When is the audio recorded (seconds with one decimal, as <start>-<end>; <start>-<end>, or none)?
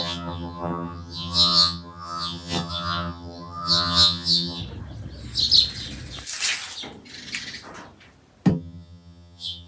4.6-8.5